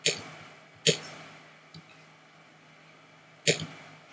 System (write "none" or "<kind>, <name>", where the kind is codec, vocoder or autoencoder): none